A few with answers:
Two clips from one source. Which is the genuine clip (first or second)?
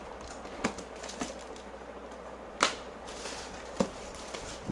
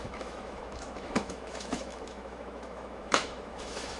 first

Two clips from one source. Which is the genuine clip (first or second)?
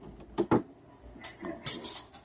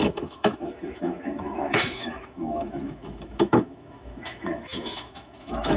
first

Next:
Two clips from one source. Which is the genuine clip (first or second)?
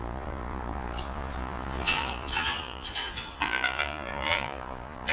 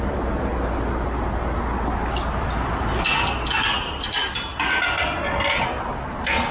second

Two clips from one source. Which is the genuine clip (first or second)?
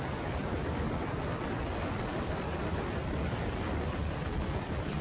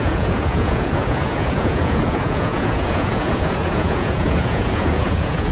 first